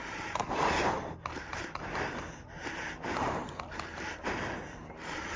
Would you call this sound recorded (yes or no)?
no